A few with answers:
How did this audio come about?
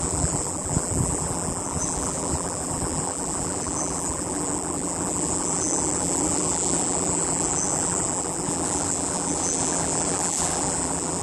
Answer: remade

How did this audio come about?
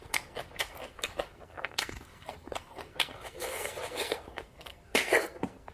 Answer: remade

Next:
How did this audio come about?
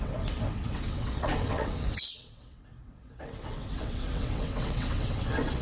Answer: remade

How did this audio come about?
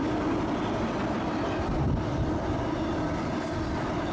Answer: recorded